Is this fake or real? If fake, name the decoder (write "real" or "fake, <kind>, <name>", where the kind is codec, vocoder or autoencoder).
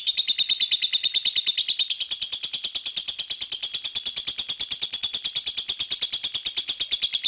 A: real